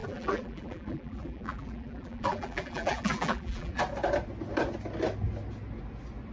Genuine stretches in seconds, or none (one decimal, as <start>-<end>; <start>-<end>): 3.8-6.3

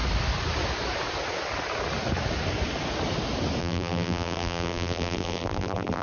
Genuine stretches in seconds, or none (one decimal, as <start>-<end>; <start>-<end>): 0.0-3.6

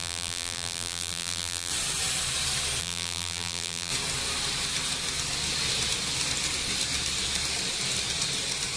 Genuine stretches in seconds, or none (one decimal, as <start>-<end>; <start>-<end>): 1.7-2.8; 3.9-8.8